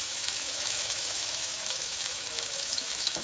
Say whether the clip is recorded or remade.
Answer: remade